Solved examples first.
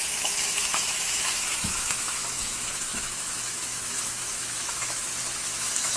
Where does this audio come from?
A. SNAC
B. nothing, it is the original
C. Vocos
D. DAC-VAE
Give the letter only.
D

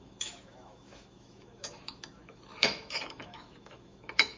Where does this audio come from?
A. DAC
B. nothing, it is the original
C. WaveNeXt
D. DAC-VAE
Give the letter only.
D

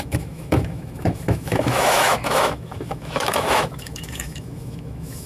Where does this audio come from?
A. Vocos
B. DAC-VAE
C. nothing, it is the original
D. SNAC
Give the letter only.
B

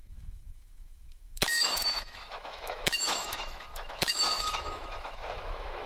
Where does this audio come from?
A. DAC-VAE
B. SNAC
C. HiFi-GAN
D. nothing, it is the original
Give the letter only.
A